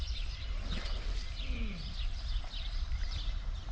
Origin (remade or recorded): remade